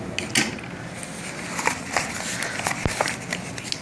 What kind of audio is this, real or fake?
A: real